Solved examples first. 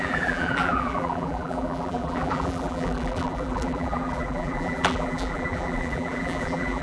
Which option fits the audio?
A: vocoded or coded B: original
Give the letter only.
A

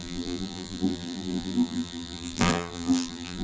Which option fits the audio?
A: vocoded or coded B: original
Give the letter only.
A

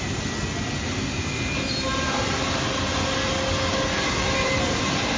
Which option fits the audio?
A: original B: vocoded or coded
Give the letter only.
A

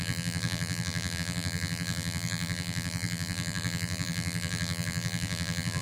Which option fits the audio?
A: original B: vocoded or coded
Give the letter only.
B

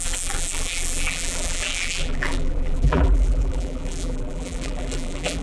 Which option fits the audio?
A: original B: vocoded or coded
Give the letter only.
B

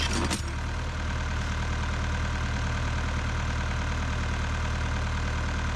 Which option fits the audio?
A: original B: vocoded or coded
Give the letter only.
A